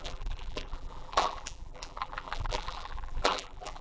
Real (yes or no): no